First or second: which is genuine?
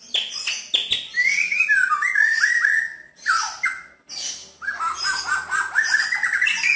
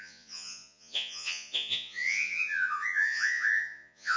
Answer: first